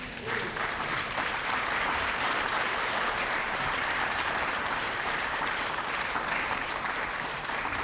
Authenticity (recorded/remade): remade